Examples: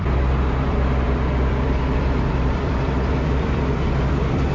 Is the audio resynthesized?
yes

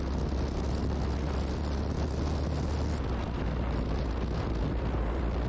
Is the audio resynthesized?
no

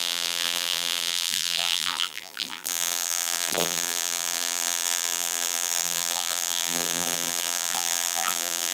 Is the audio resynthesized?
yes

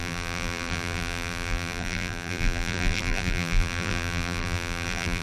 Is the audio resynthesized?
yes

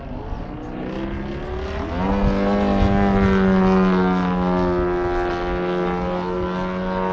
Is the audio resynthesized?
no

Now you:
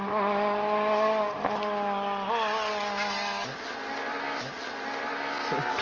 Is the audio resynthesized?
no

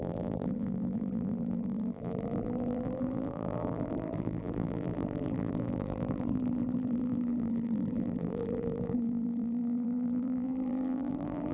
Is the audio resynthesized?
yes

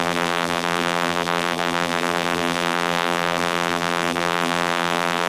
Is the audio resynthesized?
yes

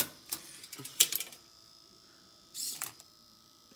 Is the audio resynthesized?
yes